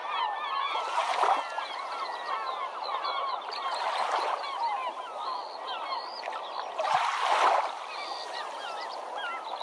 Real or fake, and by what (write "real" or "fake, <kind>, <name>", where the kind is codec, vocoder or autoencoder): real